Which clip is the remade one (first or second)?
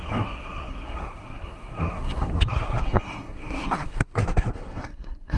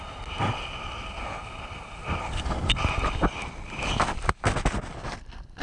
first